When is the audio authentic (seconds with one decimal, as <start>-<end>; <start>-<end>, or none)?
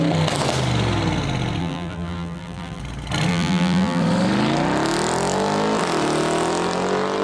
0.0-1.6; 2.8-3.3; 4.0-7.2